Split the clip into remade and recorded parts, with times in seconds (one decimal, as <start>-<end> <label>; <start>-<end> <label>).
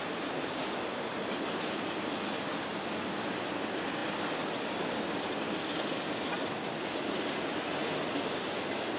0.0-9.0 recorded